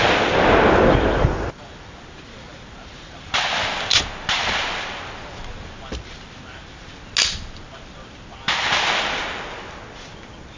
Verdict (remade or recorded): recorded